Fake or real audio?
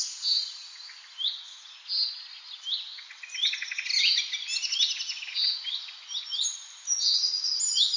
real